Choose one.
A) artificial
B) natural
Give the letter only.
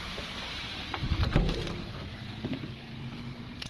A